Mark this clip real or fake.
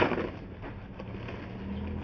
real